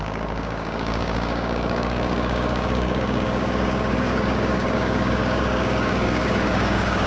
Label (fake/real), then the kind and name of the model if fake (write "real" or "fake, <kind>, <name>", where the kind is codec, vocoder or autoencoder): fake, codec, DAC